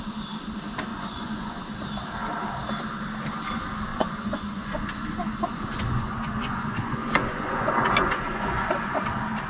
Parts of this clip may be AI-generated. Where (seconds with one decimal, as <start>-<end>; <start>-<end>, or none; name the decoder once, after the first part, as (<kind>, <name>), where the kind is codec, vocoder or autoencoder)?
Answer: 0.9-1.6 (vocoder, Vocos); 3.9-8.7